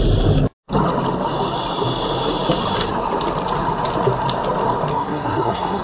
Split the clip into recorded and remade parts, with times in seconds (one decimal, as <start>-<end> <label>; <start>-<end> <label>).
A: 0.0-4.9 recorded; 4.9-5.8 remade